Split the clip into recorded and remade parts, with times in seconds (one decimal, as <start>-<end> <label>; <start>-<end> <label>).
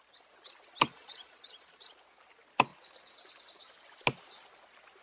0.0-0.9 recorded; 0.9-1.9 remade; 1.9-5.0 recorded